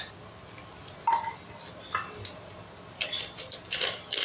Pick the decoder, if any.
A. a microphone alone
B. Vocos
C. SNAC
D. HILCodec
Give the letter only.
A